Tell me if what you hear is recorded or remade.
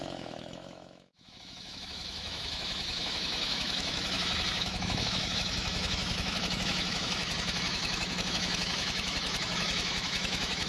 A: remade